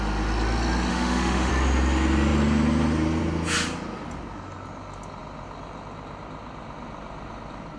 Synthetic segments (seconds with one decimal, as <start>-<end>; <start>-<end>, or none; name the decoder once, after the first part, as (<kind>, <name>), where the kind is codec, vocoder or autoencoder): 0.9-1.5 (autoencoder, DAC-VAE)